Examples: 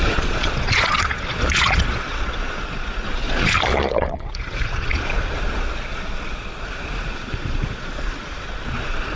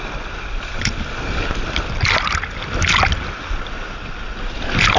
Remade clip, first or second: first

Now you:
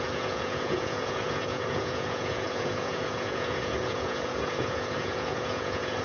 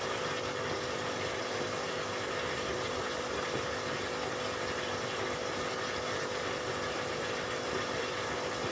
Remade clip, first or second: first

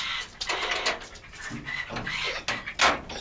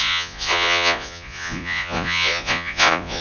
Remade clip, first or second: second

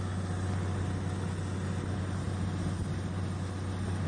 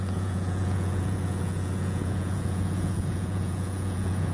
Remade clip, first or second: second